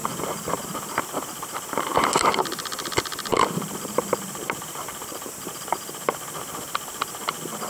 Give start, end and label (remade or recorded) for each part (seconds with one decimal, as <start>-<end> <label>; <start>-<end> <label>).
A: 0.0-0.6 remade; 0.6-3.3 recorded; 3.3-5.6 remade; 5.6-7.7 recorded